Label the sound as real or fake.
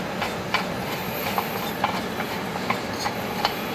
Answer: real